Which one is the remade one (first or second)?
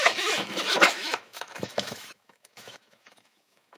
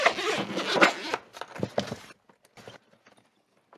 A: first